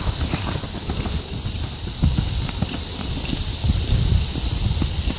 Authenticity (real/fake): real